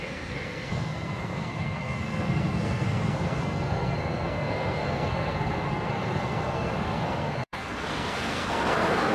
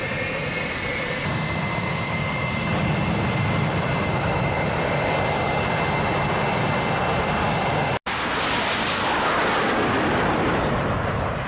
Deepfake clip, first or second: first